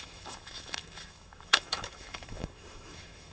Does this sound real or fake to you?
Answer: fake